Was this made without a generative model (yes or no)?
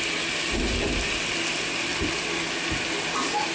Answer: yes